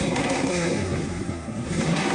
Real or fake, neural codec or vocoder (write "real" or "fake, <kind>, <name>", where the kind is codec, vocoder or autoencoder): fake, codec, SNAC